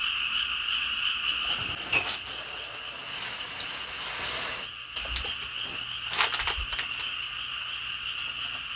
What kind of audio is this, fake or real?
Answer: real